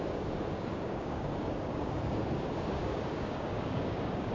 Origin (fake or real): fake